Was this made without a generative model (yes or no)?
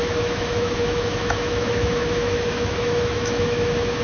no